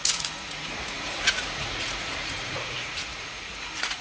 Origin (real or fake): fake